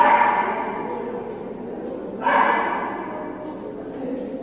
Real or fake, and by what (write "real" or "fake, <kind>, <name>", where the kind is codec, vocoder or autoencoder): real